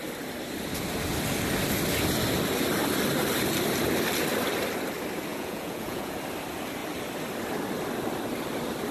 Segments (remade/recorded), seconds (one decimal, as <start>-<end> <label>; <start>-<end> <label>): 0.0-5.3 recorded; 5.3-6.2 remade; 6.2-8.9 recorded